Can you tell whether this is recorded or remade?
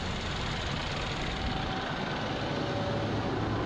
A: recorded